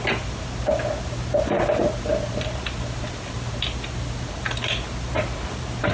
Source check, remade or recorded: recorded